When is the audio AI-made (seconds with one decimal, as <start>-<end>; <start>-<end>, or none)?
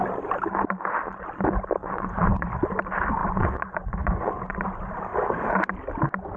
1.8-2.5; 3.2-4.5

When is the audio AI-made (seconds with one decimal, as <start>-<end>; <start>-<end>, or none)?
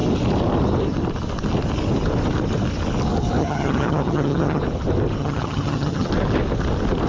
3.4-4.6; 5.2-6.1